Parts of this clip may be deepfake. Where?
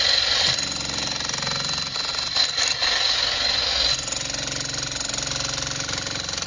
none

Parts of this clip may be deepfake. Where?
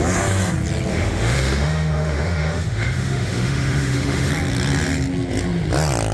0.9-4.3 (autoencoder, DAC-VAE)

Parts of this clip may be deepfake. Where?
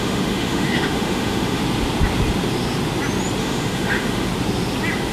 0.0-1.6 (autoencoder, DAC-VAE); 3.4-4.3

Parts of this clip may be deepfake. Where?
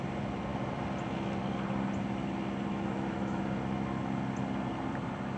2.7-3.4 (autoencoder, DAC-VAE)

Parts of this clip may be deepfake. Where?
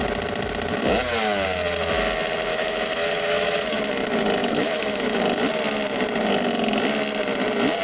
2.5-3.8 (autoencoder, DAC-VAE); 4.4-5.2